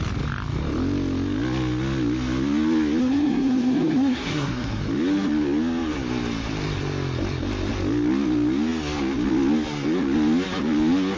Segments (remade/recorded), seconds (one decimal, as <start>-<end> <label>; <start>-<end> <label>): 0.0-3.0 recorded; 3.0-4.8 remade; 4.8-11.2 recorded